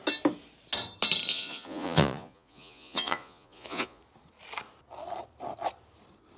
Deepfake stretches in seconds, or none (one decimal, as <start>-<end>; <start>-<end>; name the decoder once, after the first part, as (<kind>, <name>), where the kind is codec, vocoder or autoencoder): 1.3-4.0 (vocoder, Vocos)